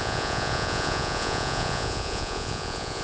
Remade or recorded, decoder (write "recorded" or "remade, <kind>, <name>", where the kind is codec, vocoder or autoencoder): remade, vocoder, Vocos